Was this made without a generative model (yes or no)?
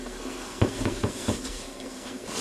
no